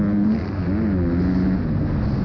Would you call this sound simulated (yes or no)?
no